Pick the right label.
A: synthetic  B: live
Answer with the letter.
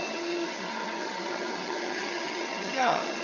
A